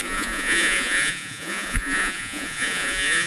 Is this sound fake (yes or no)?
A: yes